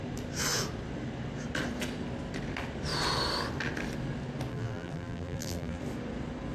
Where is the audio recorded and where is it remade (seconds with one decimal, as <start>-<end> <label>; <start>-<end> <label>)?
0.0-4.5 recorded; 4.5-5.8 remade; 5.8-6.5 recorded